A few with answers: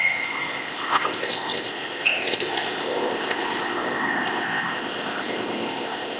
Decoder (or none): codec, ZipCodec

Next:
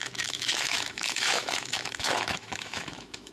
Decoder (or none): autoencoder, DAC-VAE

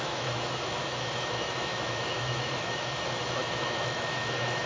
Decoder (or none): autoencoder, DAC-VAE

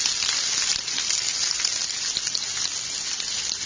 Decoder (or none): none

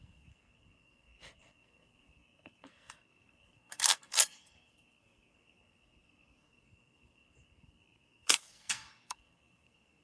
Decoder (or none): codec, SNAC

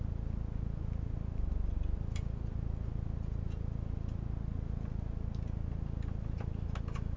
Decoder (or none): none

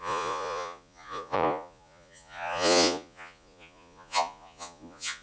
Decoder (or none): vocoder, Vocos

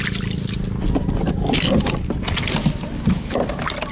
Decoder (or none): none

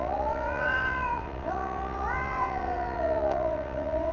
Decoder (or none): vocoder, WaveNeXt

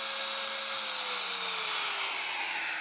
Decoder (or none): none